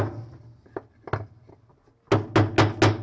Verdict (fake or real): real